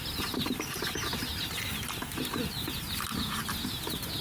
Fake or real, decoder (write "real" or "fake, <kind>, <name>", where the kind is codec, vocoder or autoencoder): real